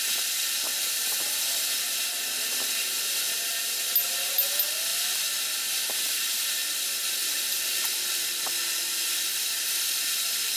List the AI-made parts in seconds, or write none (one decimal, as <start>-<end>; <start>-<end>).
7.2-7.8; 9.3-10.6